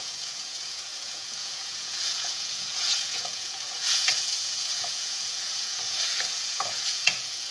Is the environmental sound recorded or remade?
remade